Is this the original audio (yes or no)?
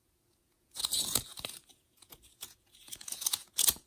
no